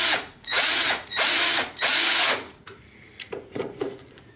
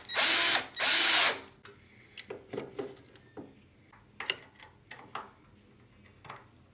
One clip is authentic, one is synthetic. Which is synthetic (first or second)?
first